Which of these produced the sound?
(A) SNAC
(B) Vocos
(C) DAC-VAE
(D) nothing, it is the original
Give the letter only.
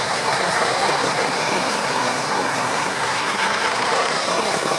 A